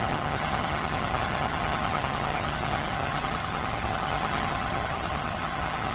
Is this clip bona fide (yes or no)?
no